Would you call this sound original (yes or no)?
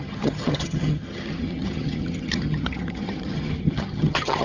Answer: no